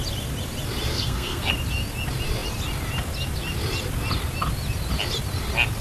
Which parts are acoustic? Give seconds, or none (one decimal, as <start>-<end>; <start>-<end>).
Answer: 0.0-0.9; 1.5-5.8